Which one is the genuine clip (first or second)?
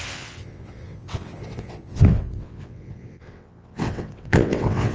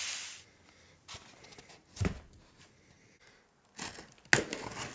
second